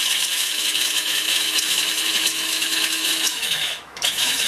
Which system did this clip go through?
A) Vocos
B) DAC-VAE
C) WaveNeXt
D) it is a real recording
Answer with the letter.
B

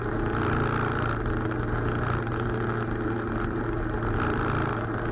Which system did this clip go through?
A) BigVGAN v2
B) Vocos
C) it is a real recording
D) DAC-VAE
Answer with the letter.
C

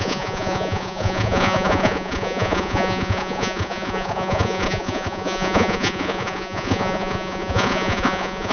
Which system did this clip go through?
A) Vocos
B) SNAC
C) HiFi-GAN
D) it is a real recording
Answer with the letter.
A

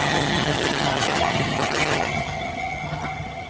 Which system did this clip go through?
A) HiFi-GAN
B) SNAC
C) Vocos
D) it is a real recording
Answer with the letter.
A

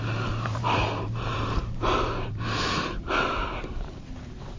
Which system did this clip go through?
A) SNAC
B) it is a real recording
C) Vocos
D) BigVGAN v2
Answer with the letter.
D